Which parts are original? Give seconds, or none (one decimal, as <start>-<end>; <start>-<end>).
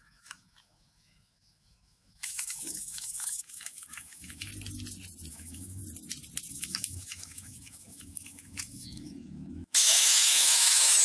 4.5-5.3; 5.8-6.5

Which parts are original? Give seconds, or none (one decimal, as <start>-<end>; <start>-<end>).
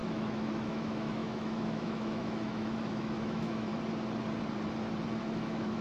3.7-5.2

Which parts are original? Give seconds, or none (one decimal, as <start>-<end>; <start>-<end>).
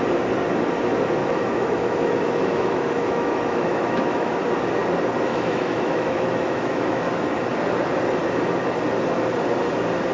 0.0-1.2; 4.4-5.3; 7.1-10.1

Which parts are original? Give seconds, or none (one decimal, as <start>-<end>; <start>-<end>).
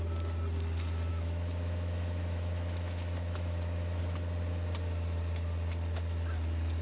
0.0-1.1; 4.0-6.8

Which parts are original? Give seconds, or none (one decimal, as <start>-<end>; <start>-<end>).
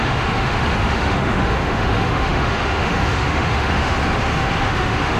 none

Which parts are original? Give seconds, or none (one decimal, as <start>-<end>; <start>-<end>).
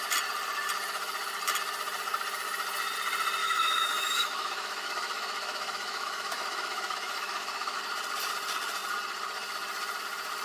0.0-3.4; 7.8-10.4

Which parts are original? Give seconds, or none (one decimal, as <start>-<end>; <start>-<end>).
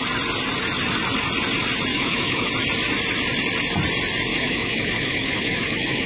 0.0-1.9; 2.5-4.3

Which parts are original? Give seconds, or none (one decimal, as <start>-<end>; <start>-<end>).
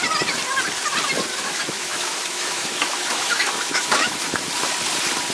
0.0-1.3; 4.5-5.3